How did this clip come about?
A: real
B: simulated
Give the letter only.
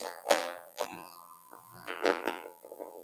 B